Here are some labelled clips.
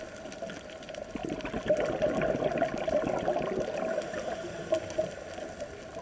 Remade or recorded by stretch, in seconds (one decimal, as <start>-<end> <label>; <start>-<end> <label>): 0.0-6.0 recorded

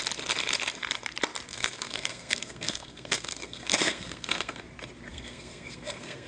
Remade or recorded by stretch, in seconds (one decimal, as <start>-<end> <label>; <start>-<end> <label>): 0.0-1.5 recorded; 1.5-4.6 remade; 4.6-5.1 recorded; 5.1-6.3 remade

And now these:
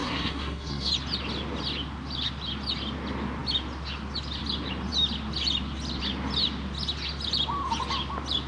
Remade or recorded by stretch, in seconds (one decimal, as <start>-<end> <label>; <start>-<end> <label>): 0.0-0.9 remade; 0.9-8.5 recorded

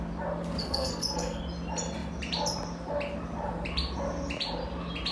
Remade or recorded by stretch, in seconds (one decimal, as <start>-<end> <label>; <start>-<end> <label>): 0.0-0.6 recorded; 0.6-1.4 remade; 1.4-5.1 recorded

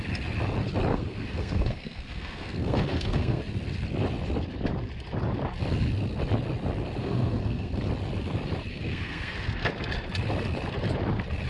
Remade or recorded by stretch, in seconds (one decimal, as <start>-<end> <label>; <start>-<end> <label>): 0.0-0.9 recorded; 0.9-3.4 remade; 3.4-7.0 recorded; 7.0-7.8 remade; 7.8-8.7 recorded; 8.7-9.7 remade; 9.7-11.5 recorded

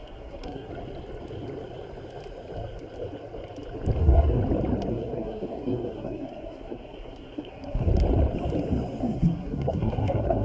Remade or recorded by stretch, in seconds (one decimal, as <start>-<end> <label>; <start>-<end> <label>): 0.0-0.7 remade; 0.7-4.0 recorded; 4.0-4.4 remade; 4.4-4.9 recorded; 4.9-7.9 remade; 7.9-9.0 recorded; 9.0-10.4 remade